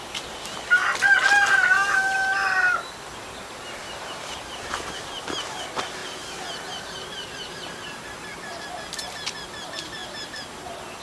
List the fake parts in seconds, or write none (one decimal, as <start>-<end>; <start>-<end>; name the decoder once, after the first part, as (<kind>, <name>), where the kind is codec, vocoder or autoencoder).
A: 3.8-5.0 (vocoder, BigVGAN v2); 6.0-8.6